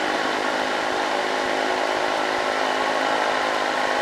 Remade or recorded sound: recorded